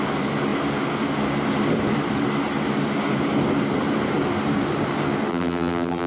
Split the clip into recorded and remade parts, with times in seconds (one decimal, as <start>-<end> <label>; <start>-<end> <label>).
0.0-5.3 recorded; 5.3-6.1 remade